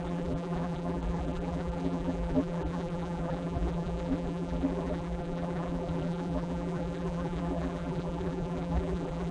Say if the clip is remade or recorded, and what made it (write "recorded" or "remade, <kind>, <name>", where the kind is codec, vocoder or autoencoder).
remade, vocoder, BigVGAN v2